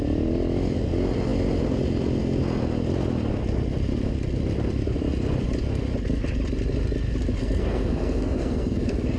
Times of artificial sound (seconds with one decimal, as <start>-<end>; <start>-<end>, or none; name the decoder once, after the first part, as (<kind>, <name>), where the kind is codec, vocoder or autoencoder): 7.4-9.2 (codec, SNAC)